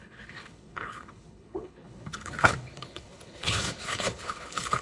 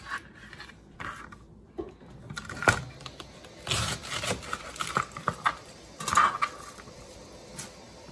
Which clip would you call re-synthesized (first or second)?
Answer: first